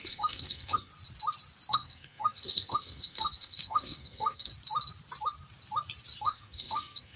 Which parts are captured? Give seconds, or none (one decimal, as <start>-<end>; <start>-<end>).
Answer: 0.9-1.7; 4.5-6.2